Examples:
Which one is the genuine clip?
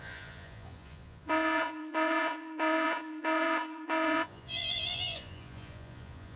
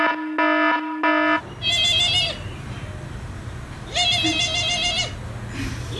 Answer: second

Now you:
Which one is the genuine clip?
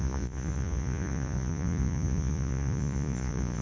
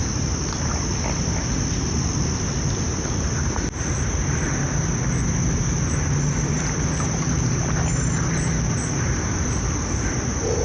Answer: second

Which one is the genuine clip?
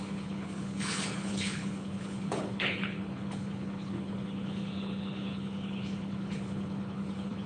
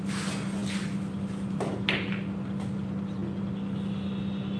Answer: second